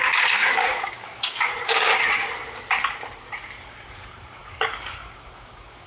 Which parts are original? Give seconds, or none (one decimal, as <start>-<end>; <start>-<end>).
1.9-3.9